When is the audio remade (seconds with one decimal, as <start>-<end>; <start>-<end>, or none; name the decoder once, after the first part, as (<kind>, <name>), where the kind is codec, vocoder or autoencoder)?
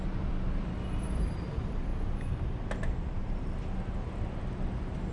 0.0-1.9 (vocoder, BigVGAN v2); 2.8-3.2; 4.4-5.1